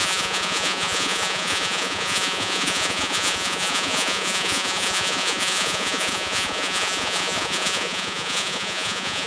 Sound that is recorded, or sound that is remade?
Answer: remade